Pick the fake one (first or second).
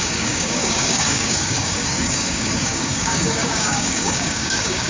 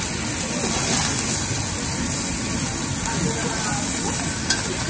first